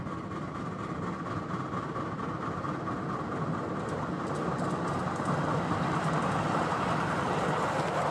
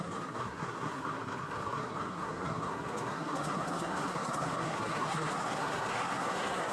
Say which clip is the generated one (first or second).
second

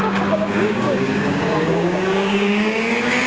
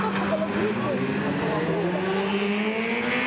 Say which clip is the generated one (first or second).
first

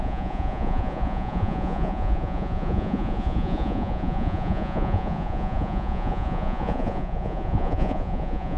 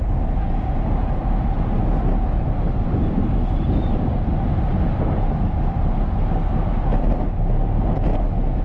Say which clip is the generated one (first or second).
first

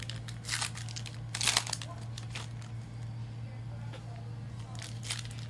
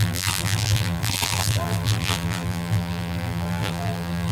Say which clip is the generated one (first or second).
second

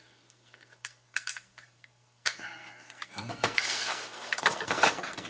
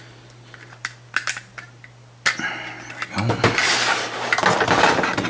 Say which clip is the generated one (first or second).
first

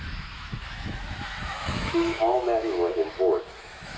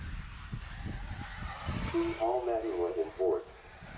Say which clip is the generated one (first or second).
first